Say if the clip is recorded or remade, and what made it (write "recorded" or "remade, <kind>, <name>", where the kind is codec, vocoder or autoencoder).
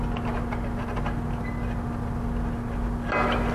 recorded